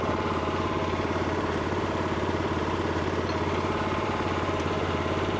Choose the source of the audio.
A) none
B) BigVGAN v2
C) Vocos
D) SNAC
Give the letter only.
B